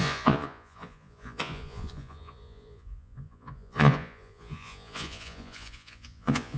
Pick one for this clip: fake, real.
fake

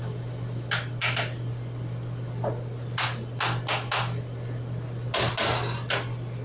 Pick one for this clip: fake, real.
real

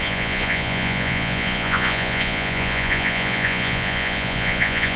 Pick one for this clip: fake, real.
fake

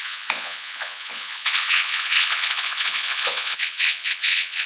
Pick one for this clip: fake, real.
fake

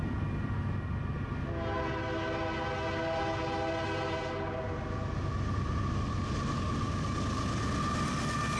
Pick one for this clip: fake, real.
real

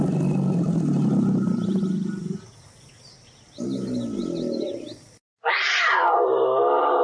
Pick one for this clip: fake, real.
real